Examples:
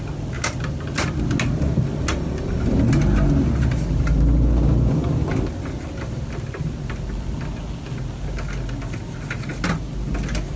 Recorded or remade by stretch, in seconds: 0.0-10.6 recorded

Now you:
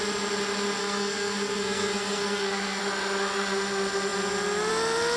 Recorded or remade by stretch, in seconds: 0.0-0.8 recorded; 0.8-2.8 remade; 2.8-5.2 recorded

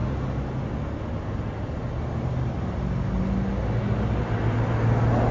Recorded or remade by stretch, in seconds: 0.0-5.3 recorded

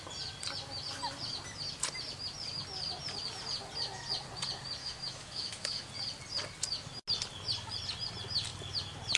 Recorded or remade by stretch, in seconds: 0.0-4.8 recorded; 4.8-5.9 remade; 5.9-9.2 recorded

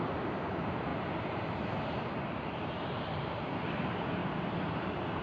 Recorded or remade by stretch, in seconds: 0.0-0.9 remade; 0.9-2.3 recorded; 2.3-5.2 remade